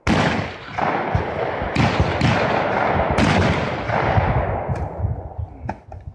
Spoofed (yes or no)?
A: no